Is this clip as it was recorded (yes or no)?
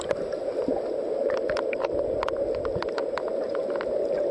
yes